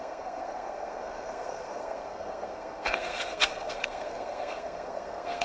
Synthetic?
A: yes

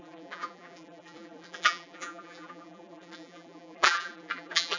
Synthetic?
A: yes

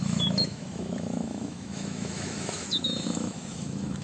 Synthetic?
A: yes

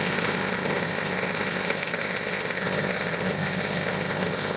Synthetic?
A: yes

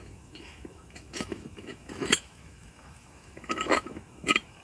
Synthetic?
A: yes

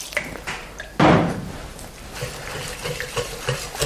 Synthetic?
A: no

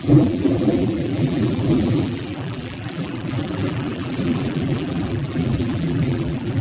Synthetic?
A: yes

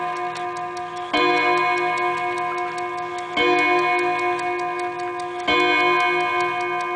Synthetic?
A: no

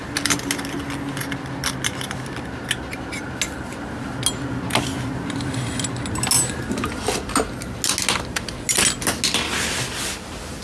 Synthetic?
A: no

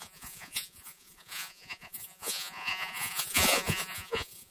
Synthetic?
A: yes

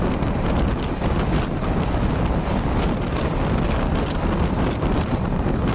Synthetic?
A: no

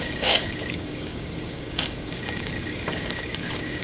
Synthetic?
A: yes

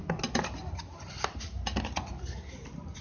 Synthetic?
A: no